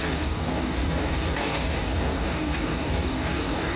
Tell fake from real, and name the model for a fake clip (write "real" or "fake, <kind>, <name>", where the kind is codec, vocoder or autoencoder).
fake, codec, DAC